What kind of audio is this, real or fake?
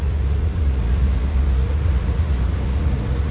fake